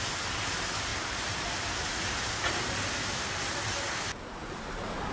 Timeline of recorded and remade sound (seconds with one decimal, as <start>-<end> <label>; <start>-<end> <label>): 0.0-5.1 recorded